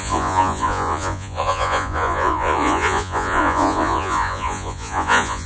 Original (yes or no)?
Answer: no